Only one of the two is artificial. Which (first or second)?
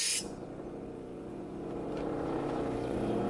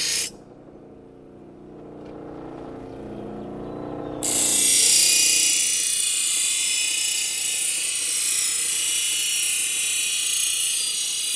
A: first